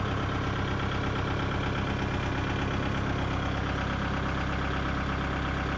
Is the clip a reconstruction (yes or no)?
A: no